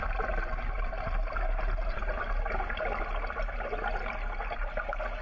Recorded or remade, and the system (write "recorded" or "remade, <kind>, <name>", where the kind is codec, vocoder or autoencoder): recorded